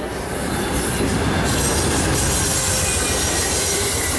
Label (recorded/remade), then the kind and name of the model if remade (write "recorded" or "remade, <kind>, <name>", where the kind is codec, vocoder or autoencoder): recorded